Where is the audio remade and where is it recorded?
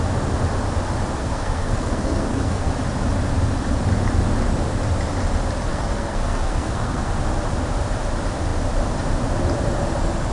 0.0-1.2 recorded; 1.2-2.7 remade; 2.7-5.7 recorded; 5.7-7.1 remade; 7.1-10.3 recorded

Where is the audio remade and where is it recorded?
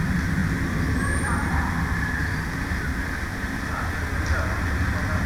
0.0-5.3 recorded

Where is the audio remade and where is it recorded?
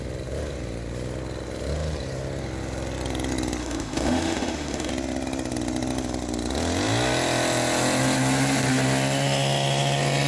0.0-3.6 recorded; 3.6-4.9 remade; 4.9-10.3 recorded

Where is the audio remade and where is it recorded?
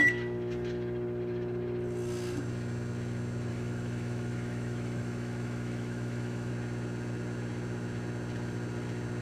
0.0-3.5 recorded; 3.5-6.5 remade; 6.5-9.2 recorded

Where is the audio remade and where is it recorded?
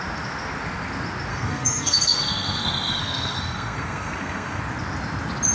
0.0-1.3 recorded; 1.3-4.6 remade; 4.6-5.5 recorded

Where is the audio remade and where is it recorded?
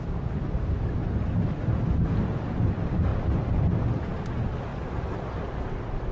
0.0-1.0 remade; 1.0-2.5 recorded; 2.5-4.7 remade; 4.7-5.5 recorded; 5.5-6.1 remade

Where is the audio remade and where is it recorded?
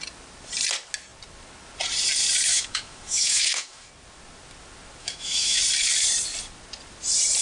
0.0-2.5 recorded; 2.5-3.9 remade; 3.9-5.0 recorded; 5.0-5.6 remade; 5.6-7.4 recorded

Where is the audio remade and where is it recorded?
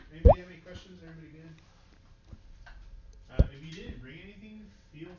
0.0-5.2 recorded